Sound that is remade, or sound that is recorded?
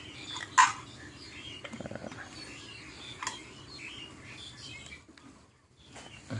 recorded